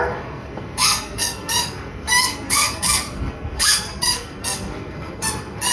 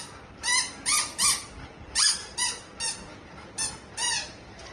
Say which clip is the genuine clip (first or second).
second